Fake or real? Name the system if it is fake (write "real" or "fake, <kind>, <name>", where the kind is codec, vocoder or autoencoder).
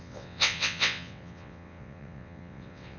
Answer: fake, vocoder, WaveNeXt